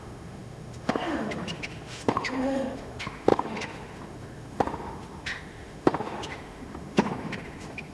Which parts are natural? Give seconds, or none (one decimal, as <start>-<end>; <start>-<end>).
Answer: none